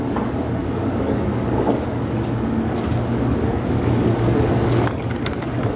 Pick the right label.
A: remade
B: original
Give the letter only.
A